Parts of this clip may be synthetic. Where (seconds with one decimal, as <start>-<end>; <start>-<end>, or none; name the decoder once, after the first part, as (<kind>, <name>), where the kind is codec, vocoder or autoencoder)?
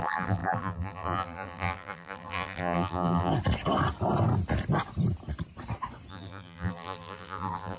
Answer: 0.0-3.3 (vocoder, BigVGAN v2); 6.1-7.8